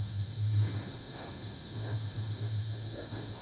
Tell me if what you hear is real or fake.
fake